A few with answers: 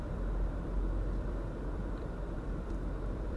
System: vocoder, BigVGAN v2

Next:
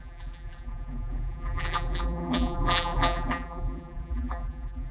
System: vocoder, BigVGAN v2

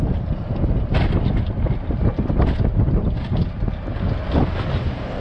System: none